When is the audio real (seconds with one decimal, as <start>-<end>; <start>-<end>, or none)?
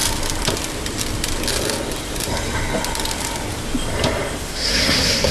0.0-4.4